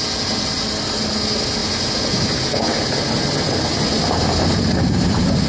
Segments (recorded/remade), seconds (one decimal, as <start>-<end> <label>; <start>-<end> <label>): 0.0-5.5 recorded